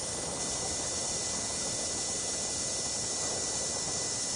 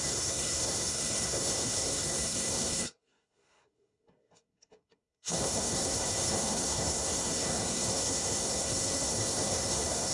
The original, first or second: first